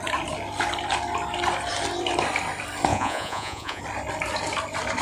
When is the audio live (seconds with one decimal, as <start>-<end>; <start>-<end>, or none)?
0.0-2.9; 3.8-5.0

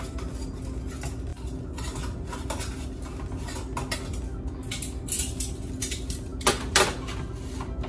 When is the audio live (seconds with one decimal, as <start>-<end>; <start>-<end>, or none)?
0.0-7.9

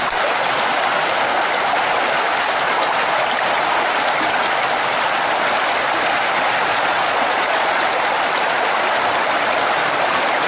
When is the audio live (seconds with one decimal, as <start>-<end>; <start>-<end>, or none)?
0.0-6.7; 7.9-10.5

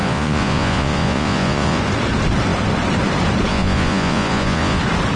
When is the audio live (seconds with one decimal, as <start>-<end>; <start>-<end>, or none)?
1.8-3.5; 4.8-5.2

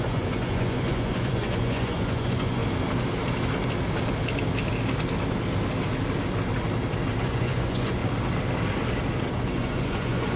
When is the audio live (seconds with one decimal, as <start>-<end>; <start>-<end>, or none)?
2.6-7.2; 8.0-9.3